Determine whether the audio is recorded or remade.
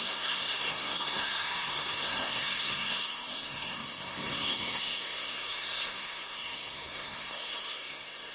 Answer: remade